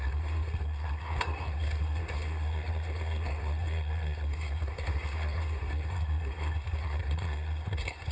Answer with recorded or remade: remade